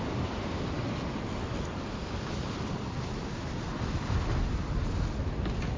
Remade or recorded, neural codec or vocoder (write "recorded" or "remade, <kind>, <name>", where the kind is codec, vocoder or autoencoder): recorded